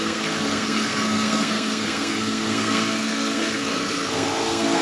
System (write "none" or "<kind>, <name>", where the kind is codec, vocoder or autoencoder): codec, SNAC